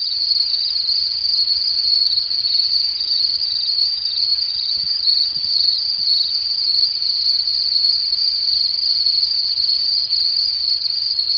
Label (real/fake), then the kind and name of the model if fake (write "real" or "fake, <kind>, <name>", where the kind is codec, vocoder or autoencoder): fake, vocoder, HiFi-GAN